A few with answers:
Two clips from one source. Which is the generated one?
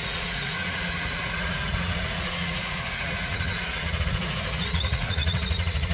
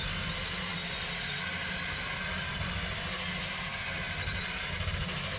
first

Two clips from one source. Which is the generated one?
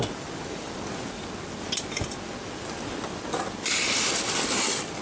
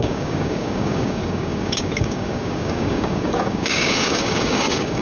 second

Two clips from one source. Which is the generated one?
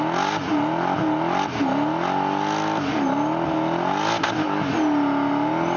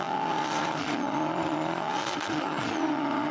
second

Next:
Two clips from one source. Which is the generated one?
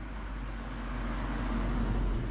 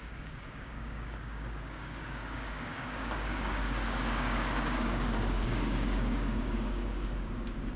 second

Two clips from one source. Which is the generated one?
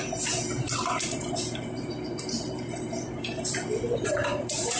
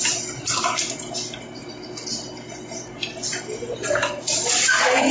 first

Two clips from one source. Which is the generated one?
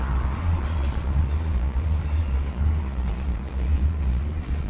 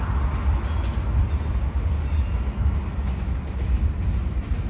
first